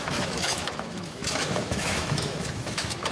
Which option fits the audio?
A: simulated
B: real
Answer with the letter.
A